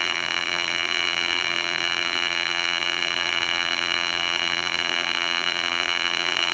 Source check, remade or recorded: remade